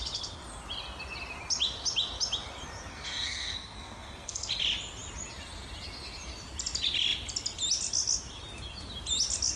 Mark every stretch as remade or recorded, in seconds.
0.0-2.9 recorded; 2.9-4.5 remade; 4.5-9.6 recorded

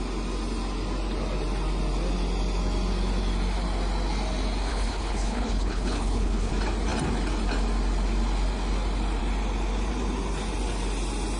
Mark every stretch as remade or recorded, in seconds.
0.0-4.7 recorded; 4.7-6.5 remade; 6.5-11.4 recorded